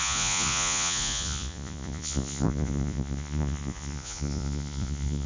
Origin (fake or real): fake